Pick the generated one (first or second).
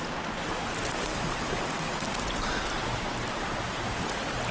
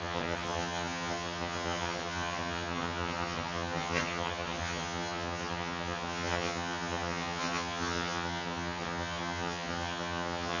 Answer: second